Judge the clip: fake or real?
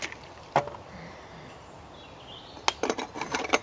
real